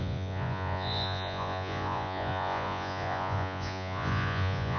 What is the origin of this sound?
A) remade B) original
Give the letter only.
A